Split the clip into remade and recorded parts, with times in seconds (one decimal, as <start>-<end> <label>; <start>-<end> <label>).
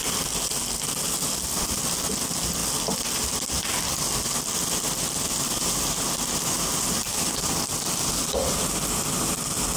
0.0-9.8 recorded